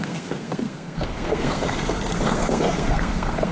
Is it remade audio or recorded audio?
remade